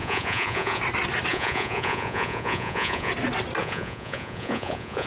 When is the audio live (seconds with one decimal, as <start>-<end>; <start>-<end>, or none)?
0.8-1.3; 3.1-3.6